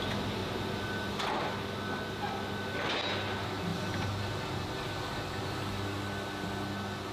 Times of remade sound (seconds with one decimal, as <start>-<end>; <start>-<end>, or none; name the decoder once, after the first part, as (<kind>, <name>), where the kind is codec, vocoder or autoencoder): none